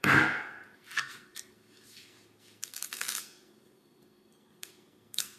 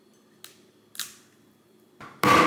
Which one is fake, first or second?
first